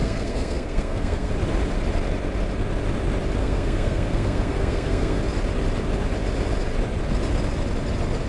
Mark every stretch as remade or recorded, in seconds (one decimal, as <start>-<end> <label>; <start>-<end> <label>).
0.0-1.3 remade; 1.3-3.4 recorded; 3.4-5.2 remade; 5.2-8.3 recorded